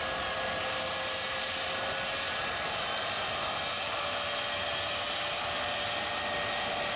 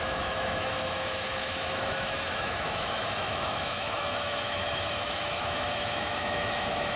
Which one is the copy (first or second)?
second